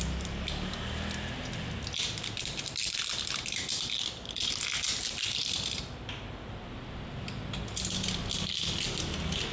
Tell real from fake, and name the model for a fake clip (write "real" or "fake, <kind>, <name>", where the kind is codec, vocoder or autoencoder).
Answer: real